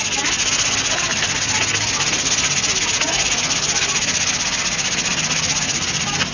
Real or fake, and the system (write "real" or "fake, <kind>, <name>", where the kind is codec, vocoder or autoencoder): real